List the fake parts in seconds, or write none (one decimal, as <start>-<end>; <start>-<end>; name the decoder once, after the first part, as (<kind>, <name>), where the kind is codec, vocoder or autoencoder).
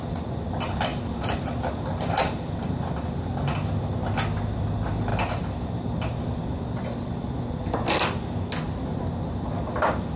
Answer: none